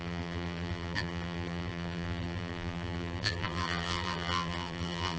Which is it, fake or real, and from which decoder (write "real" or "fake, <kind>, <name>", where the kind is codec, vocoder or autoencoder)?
fake, vocoder, BigVGAN v2